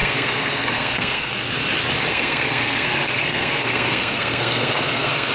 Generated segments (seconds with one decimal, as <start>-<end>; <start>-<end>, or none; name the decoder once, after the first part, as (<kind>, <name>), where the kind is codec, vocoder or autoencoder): 0.0-1.3 (codec, SNAC); 2.1-5.3